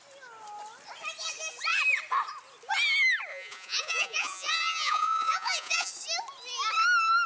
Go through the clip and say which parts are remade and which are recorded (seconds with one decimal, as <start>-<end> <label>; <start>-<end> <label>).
0.0-3.3 recorded; 3.3-5.9 remade; 5.9-7.3 recorded